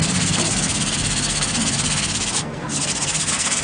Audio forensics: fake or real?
fake